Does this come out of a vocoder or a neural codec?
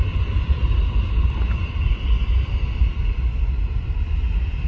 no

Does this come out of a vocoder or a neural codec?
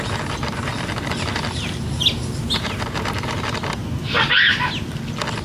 no